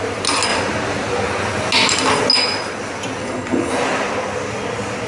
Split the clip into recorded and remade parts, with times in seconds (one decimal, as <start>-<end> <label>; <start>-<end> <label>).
0.0-3.2 recorded; 3.2-3.7 remade; 3.7-5.1 recorded